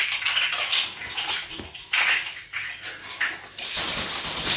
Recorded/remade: recorded